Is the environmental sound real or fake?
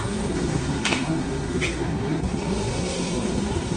fake